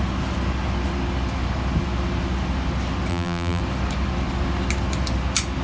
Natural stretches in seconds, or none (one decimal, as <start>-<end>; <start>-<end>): 0.0-3.1; 3.6-5.6